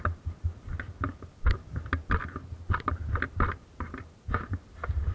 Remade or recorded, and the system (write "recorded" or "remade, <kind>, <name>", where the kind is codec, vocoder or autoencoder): recorded